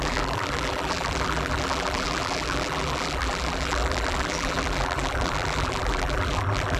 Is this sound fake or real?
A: fake